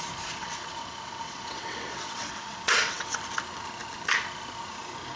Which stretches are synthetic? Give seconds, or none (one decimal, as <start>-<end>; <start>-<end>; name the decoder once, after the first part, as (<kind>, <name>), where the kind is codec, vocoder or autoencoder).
0.4-3.2 (vocoder, WaveNeXt)